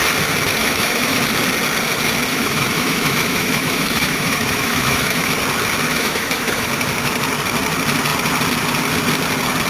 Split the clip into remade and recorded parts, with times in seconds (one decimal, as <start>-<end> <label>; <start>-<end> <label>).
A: 0.0-0.6 recorded; 0.6-1.2 remade; 1.2-2.3 recorded; 2.3-5.3 remade; 5.3-5.9 recorded; 5.9-6.7 remade; 6.7-9.7 recorded